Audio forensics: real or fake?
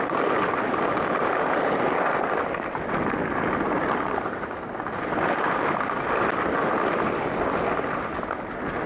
real